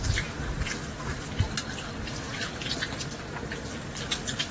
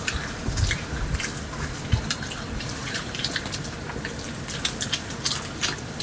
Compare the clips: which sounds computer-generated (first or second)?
second